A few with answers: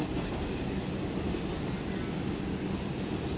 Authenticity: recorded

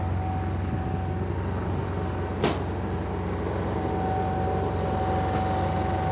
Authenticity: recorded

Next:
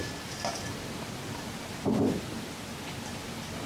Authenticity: recorded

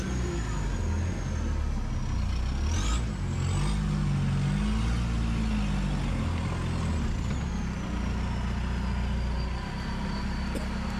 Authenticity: recorded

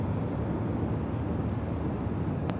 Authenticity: recorded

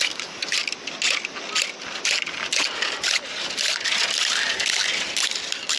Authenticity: recorded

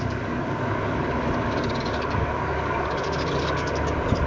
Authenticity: remade